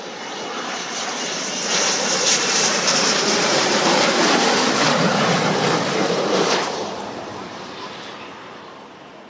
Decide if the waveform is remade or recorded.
remade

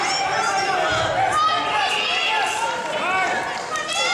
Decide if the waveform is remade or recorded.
recorded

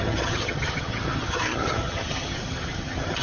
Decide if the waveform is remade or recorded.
remade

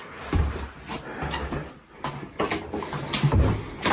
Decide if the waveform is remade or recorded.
recorded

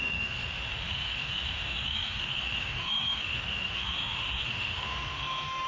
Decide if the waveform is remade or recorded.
remade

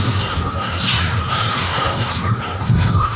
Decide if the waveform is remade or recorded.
remade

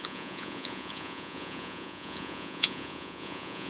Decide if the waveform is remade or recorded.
remade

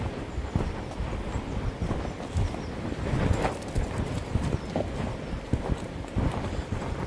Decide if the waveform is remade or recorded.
recorded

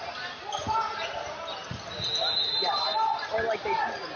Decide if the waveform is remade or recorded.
recorded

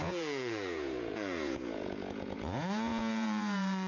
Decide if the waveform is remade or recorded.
remade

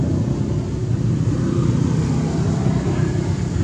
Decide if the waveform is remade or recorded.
recorded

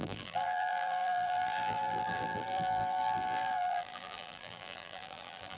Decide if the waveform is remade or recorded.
remade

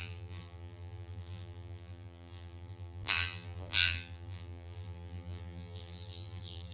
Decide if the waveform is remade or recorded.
remade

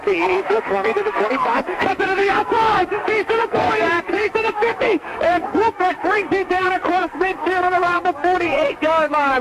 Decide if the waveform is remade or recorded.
remade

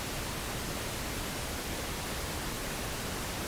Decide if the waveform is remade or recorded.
recorded